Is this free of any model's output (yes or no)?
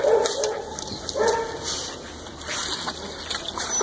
yes